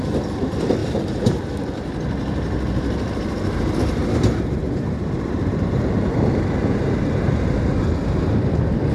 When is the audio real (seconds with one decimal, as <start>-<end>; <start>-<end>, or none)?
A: 0.0-0.8; 1.5-4.0; 7.8-8.9